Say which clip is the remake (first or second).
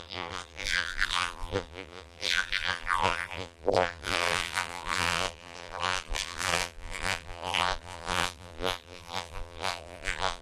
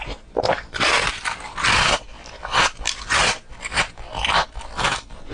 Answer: first